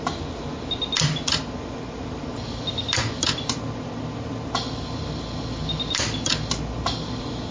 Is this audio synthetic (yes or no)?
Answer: no